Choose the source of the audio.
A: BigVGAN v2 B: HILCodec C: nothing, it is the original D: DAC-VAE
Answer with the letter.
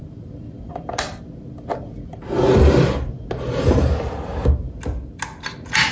C